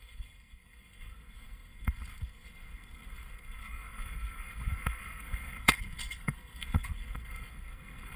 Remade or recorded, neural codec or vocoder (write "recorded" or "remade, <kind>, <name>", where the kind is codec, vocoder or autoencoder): remade, codec, SNAC